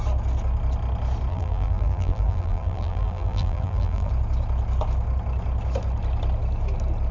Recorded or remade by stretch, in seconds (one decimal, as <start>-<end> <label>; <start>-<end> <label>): 0.0-1.3 recorded; 1.3-4.1 remade; 4.1-7.1 recorded